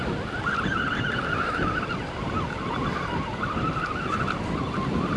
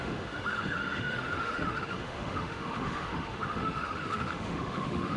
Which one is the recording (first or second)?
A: first